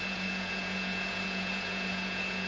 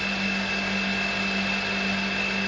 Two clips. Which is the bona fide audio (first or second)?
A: second